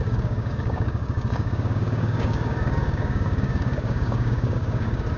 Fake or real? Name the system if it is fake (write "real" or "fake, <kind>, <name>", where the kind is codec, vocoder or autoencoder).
fake, codec, DAC